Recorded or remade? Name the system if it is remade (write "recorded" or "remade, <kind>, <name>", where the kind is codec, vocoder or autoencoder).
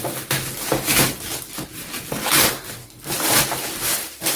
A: recorded